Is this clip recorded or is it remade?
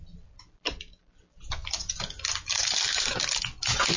recorded